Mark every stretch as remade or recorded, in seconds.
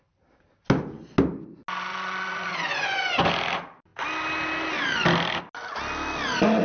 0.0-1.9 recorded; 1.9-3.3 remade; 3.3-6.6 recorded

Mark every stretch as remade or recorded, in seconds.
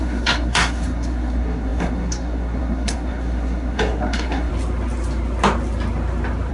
0.0-4.5 remade; 4.5-6.5 recorded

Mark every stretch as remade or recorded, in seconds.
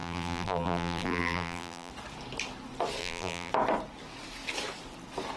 0.0-1.9 remade; 1.9-3.0 recorded; 3.0-3.5 remade; 3.5-5.4 recorded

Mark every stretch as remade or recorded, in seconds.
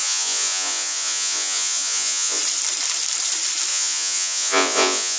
0.0-2.4 remade; 2.4-3.7 recorded; 3.7-5.2 remade